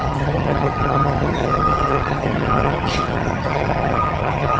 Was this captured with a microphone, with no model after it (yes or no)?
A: no